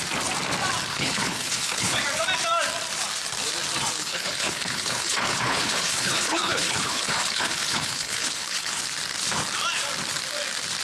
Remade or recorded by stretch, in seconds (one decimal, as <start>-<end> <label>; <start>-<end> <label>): 0.0-0.9 recorded; 0.9-2.0 remade; 2.0-4.0 recorded; 4.0-8.8 remade; 8.8-10.8 recorded